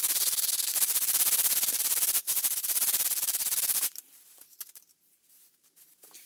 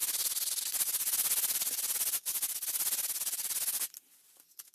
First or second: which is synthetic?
first